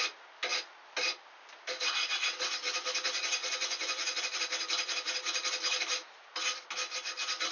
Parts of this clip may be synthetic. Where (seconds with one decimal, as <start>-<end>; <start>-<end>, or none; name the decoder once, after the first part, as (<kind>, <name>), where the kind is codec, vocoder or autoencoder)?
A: 3.4-4.2 (vocoder, Vocos)